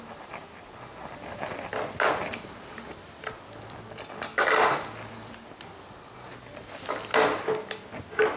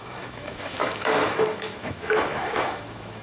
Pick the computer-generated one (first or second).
second